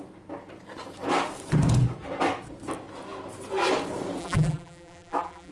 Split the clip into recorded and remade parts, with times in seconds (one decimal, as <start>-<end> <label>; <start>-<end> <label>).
0.0-4.2 recorded; 4.2-5.5 remade